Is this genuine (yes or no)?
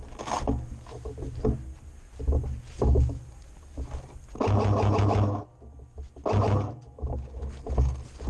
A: yes